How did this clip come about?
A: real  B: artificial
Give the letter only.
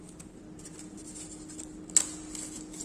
A